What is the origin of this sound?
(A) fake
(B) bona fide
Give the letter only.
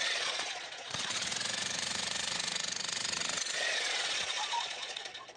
A